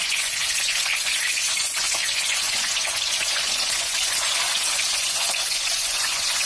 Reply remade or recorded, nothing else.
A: remade